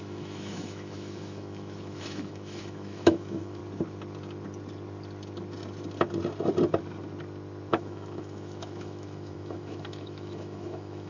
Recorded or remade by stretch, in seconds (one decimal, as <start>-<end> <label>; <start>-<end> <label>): 0.0-3.6 remade; 3.6-7.7 recorded; 7.7-11.1 remade